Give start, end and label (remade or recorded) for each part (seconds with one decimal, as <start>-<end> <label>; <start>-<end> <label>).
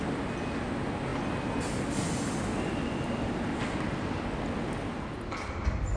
0.0-6.0 recorded